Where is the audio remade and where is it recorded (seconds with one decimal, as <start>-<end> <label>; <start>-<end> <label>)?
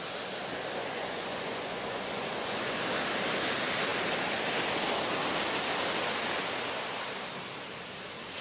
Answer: 0.0-0.8 recorded; 0.8-2.8 remade; 2.8-8.4 recorded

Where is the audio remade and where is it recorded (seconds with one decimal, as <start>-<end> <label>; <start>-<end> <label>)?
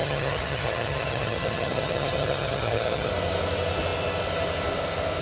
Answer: 0.0-3.1 remade; 3.1-5.2 recorded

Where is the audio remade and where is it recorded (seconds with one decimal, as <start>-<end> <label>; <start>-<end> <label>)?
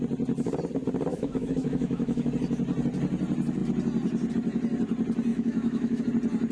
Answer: 0.0-1.1 recorded; 1.1-2.3 remade; 2.3-5.3 recorded; 5.3-6.0 remade; 6.0-6.5 recorded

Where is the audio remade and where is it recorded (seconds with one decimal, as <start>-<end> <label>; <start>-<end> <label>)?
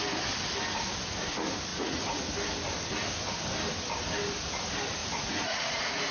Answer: 0.0-1.7 recorded; 1.7-2.2 remade; 2.2-5.0 recorded; 5.0-6.1 remade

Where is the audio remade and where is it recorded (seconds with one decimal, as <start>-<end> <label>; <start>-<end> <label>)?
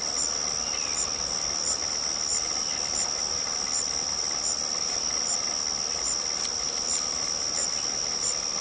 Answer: 0.0-8.6 recorded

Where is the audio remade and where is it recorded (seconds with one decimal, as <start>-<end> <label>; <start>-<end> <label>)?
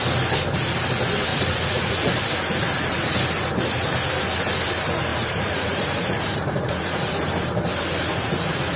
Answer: 0.0-1.3 recorded; 1.3-2.1 remade; 2.1-5.1 recorded; 5.1-7.3 remade; 7.3-8.1 recorded; 8.1-8.8 remade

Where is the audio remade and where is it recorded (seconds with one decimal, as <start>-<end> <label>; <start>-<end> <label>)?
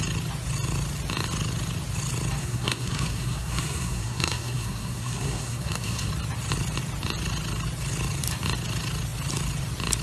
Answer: 0.0-2.4 recorded; 2.4-6.1 remade; 6.1-10.0 recorded